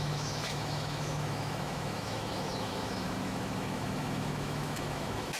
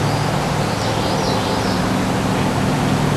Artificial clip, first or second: first